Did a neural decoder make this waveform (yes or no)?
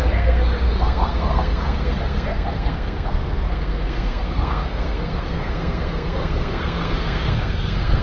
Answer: yes